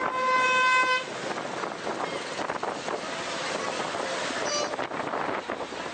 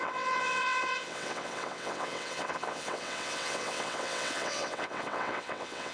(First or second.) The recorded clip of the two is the first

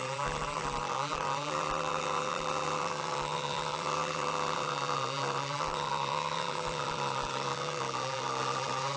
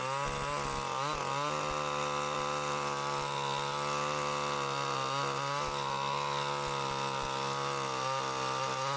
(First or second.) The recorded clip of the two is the second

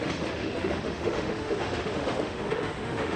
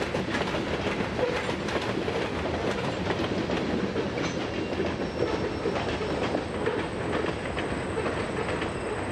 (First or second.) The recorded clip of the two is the second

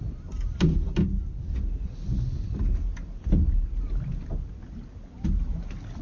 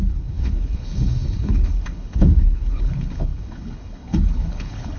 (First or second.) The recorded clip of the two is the first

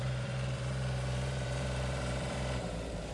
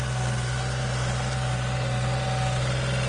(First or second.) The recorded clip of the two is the second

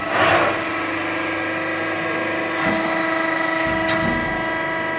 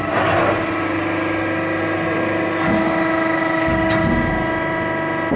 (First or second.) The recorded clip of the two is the first